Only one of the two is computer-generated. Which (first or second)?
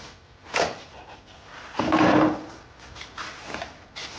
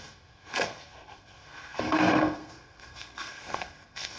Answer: second